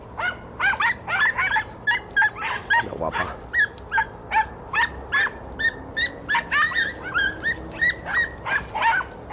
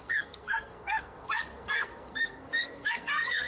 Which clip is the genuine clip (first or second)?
first